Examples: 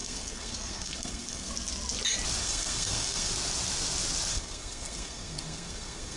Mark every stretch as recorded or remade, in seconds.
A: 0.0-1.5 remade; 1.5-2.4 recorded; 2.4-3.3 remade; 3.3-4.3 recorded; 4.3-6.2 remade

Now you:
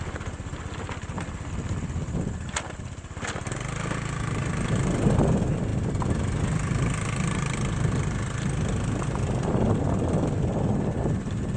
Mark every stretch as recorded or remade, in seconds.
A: 0.0-11.6 recorded

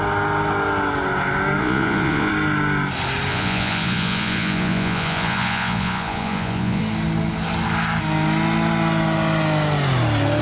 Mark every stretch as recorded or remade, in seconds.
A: 0.0-1.6 recorded; 1.6-2.3 remade; 2.3-3.3 recorded; 3.3-6.8 remade; 6.8-10.4 recorded

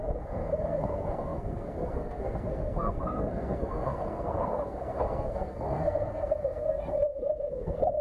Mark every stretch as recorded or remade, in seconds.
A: 0.0-8.0 remade

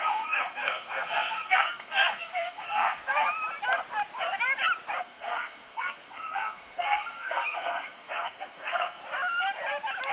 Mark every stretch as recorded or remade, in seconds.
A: 0.0-3.0 remade; 3.0-5.0 recorded; 5.0-9.0 remade; 9.0-10.1 recorded

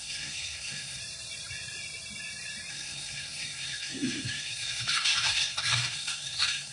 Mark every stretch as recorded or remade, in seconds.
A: 0.0-1.0 remade; 1.0-2.7 recorded; 2.7-6.7 remade